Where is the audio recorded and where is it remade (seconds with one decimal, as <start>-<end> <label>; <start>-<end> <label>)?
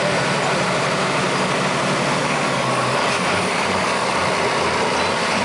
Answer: 0.0-2.2 recorded; 2.2-4.1 remade; 4.1-5.4 recorded